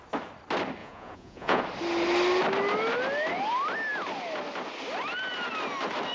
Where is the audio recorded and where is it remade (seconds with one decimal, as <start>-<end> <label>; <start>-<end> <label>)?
0.0-0.8 recorded; 0.8-1.6 remade; 1.6-6.1 recorded